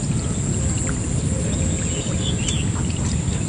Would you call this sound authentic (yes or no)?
yes